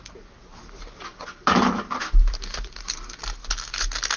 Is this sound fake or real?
real